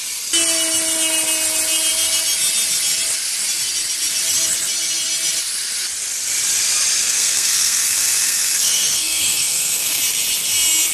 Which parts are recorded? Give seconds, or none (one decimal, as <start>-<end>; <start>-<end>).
0.0-7.0; 10.0-10.9